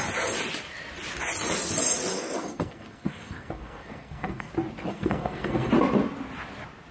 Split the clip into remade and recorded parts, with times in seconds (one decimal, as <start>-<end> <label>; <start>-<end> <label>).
0.0-2.1 recorded; 2.1-4.5 remade; 4.5-4.9 recorded; 4.9-5.7 remade; 5.7-6.9 recorded